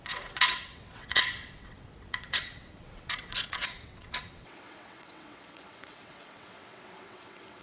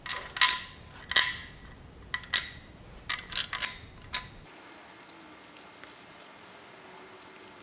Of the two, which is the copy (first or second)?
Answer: first